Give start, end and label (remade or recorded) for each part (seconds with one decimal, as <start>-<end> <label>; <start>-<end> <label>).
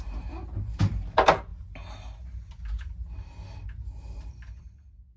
0.0-5.2 recorded